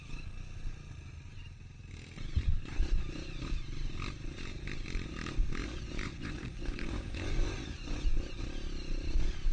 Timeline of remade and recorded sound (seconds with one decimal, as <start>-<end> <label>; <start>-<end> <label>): 0.0-5.6 recorded; 5.6-8.4 remade; 8.4-9.5 recorded